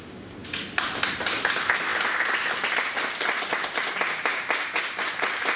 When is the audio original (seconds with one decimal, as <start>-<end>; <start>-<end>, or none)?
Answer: 0.0-5.6

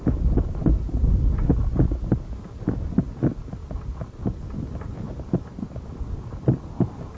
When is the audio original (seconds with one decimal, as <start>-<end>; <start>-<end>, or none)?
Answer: 0.0-7.2

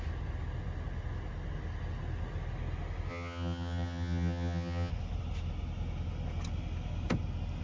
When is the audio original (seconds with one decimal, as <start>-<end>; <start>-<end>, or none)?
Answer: 0.0-3.1; 4.9-7.6

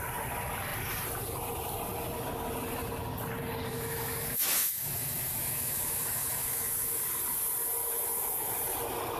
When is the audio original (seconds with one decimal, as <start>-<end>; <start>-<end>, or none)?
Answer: 0.0-3.7; 7.0-7.8; 8.5-9.2

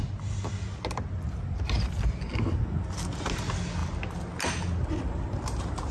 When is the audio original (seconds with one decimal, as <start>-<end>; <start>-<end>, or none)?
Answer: 0.0-5.9

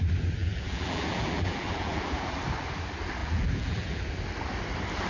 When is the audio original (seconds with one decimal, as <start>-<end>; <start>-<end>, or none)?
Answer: 0.0-0.4; 2.4-3.2; 4.0-5.1